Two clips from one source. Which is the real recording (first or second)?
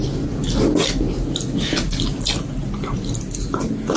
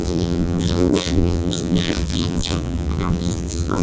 first